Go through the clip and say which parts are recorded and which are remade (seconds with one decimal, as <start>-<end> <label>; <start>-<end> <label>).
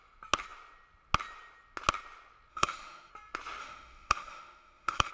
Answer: 0.0-2.5 recorded; 2.5-3.1 remade; 3.1-3.6 recorded; 3.6-5.1 remade